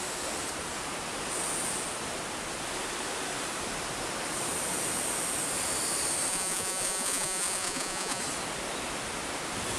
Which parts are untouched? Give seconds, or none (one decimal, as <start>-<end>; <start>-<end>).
0.0-6.3; 8.2-9.8